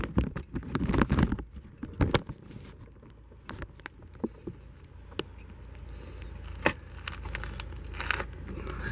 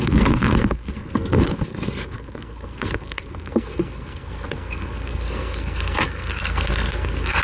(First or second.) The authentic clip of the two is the first